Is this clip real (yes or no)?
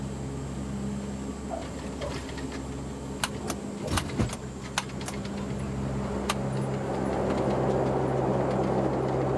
yes